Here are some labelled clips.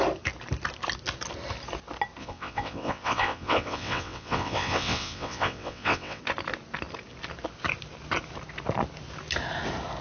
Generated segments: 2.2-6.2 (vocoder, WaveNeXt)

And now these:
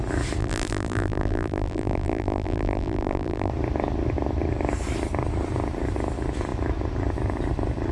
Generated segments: 0.4-3.5 (vocoder, BigVGAN v2)

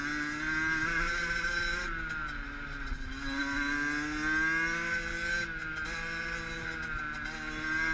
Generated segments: none

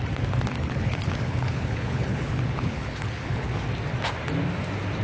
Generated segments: 0.6-3.6 (codec, HILCodec)

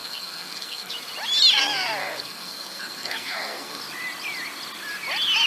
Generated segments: 0.0-0.9 (codec, SNAC); 2.0-3.8

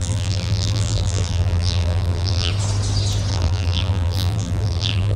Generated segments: 0.0-2.5 (vocoder, BigVGAN v2); 3.3-5.2

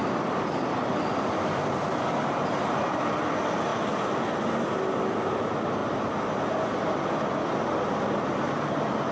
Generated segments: 0.0-9.1 (vocoder, BigVGAN v2)

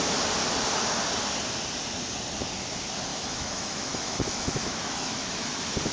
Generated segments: 3.1-5.5 (autoencoder, DAC-VAE)